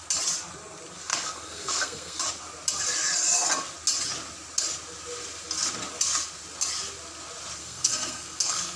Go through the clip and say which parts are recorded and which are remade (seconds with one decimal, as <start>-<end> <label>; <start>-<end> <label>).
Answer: 0.0-1.1 recorded; 1.1-2.2 remade; 2.2-7.6 recorded; 7.6-8.8 remade